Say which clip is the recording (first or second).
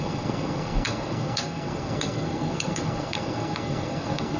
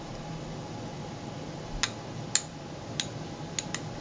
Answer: second